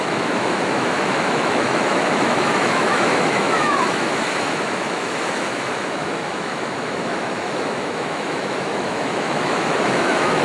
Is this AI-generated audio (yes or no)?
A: yes